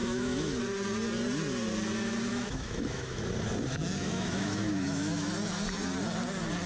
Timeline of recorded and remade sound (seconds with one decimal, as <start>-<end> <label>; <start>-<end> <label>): 0.0-0.6 remade; 0.6-2.3 recorded; 2.3-3.2 remade; 3.2-3.9 recorded; 3.9-5.3 remade; 5.3-6.7 recorded